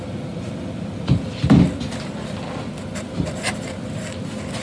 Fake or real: real